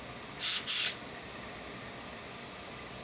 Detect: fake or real real